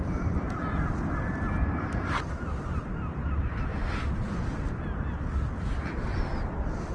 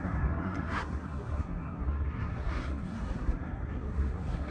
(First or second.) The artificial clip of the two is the second